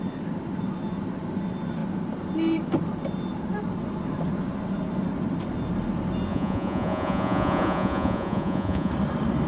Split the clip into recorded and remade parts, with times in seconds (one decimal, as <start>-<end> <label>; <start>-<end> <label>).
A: 0.0-6.3 recorded; 6.3-8.9 remade; 8.9-9.5 recorded